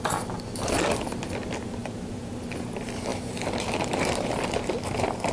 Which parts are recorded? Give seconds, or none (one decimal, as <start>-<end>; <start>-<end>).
0.0-1.8; 2.3-3.1; 4.4-5.3